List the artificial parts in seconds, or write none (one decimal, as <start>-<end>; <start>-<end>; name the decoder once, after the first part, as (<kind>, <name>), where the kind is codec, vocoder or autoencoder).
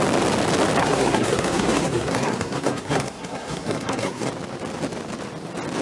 0.8-4.3 (codec, SNAC)